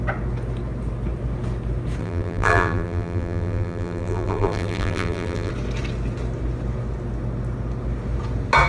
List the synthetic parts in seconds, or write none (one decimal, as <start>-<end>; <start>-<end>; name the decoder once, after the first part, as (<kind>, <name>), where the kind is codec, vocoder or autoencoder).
2.0-5.5 (vocoder, BigVGAN v2)